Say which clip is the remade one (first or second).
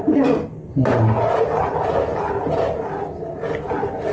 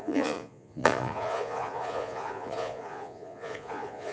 second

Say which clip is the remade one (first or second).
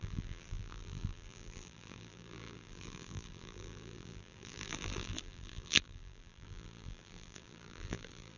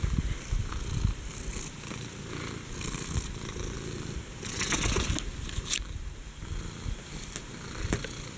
first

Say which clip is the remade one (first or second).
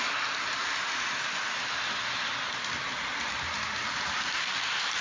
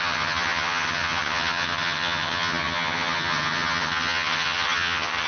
second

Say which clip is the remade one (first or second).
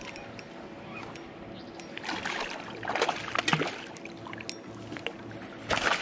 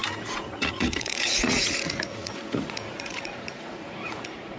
second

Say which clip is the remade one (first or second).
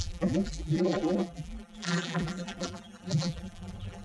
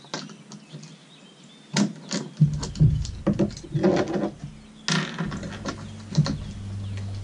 first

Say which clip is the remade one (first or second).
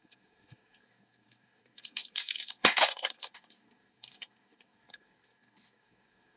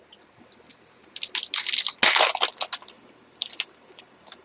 first